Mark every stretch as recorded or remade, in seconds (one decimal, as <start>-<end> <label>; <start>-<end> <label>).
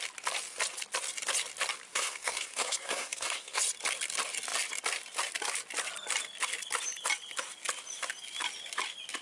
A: 0.0-1.9 recorded; 1.9-3.6 remade; 3.6-9.2 recorded